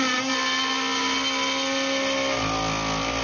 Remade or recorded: recorded